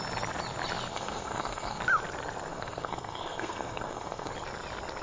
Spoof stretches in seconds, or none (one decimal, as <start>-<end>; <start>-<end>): 0.9-1.8; 2.5-4.3